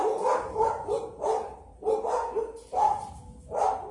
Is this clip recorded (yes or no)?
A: yes